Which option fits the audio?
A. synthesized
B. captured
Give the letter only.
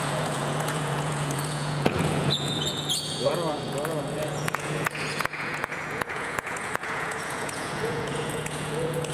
A